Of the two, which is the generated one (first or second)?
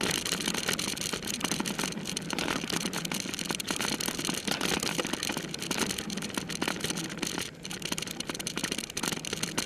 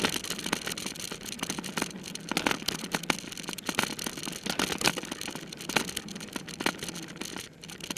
first